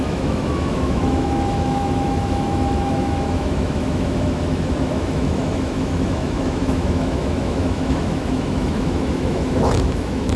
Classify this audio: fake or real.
fake